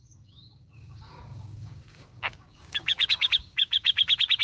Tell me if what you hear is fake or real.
fake